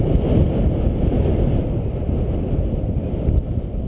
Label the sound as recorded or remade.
recorded